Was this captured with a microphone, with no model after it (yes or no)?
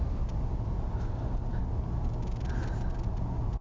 yes